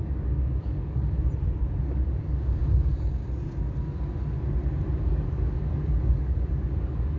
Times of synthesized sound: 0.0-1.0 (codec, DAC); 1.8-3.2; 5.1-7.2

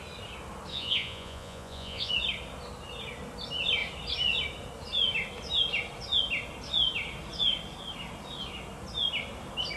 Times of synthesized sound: 0.7-2.1 (vocoder, Vocos)

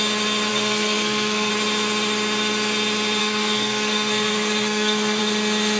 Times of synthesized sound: 0.5-1.5 (codec, SNAC); 3.2-5.2

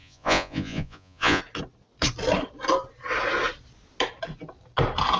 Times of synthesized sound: 0.0-1.4 (vocoder, Vocos)

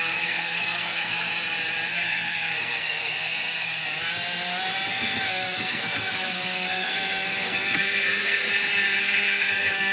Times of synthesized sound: 0.0-1.3 (codec, SNAC); 1.9-3.8; 4.9-8.4; 9.0-9.9